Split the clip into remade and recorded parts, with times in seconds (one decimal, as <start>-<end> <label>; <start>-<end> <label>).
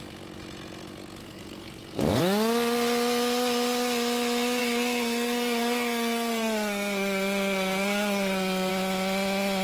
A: 0.0-1.2 recorded; 1.2-2.2 remade; 2.2-4.6 recorded; 4.6-8.7 remade; 8.7-9.6 recorded